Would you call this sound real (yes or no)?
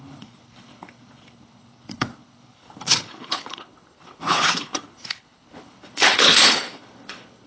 no